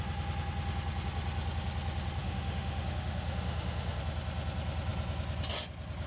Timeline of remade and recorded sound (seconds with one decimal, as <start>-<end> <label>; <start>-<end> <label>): 0.0-2.2 recorded; 2.2-4.0 remade; 4.0-6.1 recorded